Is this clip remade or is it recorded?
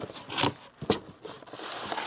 recorded